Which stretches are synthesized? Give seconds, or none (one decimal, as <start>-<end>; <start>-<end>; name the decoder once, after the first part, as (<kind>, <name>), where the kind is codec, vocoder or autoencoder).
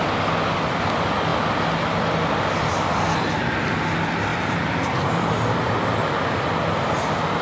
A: 4.3-5.7 (vocoder, BigVGAN v2)